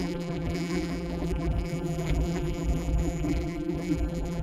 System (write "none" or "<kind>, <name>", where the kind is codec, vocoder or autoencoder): vocoder, BigVGAN v2